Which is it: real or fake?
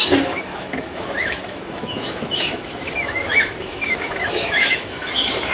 fake